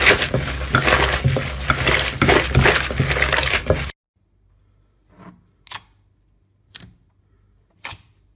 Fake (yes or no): no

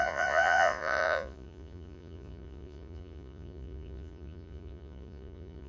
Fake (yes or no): yes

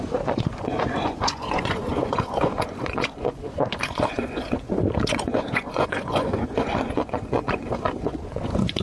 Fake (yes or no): yes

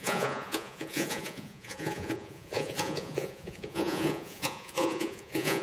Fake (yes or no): yes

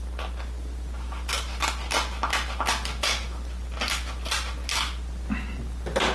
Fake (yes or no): no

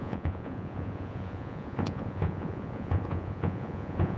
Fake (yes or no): yes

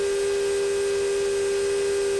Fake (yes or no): no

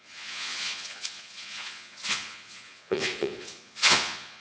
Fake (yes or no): yes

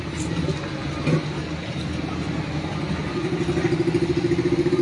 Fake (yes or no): no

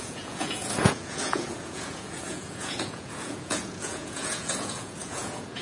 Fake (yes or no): yes